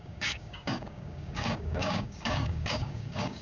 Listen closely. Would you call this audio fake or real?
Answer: fake